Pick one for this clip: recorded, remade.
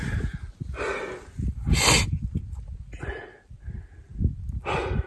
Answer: recorded